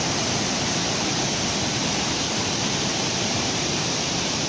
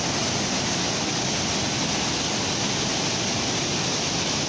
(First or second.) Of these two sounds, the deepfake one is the first